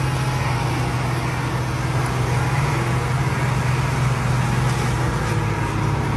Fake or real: real